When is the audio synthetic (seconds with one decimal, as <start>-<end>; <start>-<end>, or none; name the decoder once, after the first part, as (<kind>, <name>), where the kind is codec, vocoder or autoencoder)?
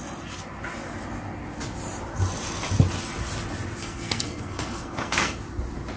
3.8-5.4 (codec, SNAC)